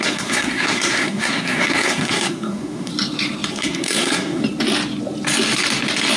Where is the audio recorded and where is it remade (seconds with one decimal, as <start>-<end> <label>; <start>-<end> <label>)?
0.0-2.9 remade; 2.9-3.5 recorded; 3.5-4.4 remade; 4.4-6.2 recorded